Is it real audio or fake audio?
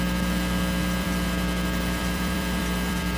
fake